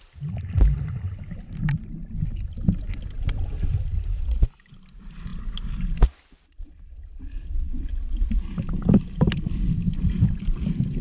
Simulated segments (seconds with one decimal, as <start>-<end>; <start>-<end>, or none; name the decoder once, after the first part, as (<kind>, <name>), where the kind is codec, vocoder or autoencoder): none